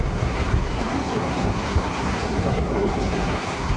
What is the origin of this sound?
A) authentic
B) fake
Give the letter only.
B